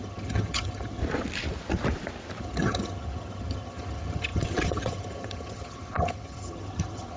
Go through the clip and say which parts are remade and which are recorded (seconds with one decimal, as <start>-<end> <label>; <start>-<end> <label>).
0.0-1.0 remade; 1.0-2.4 recorded; 2.4-7.2 remade